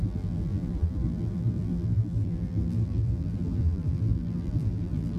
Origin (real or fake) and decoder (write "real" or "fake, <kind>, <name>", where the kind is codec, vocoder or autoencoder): fake, vocoder, BigVGAN v2